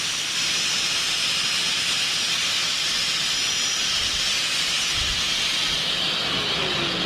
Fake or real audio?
real